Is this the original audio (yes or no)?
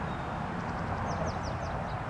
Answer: yes